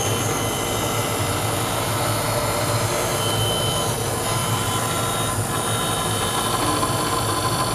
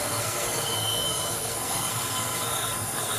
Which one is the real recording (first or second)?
first